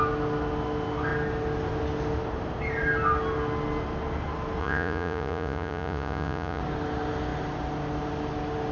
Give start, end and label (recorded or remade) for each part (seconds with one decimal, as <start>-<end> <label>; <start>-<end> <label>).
0.0-4.6 recorded; 4.6-6.6 remade; 6.6-8.7 recorded